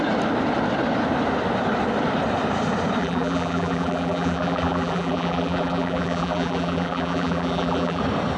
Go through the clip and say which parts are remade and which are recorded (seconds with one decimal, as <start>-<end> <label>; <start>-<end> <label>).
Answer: 0.0-3.0 recorded; 3.0-8.0 remade; 8.0-8.4 recorded